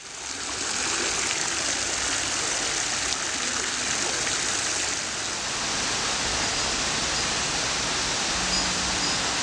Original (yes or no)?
yes